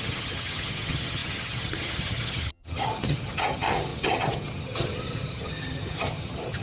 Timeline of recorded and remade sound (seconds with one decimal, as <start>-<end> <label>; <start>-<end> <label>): 0.0-6.6 remade